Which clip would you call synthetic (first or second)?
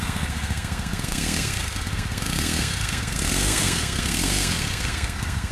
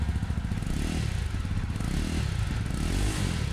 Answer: first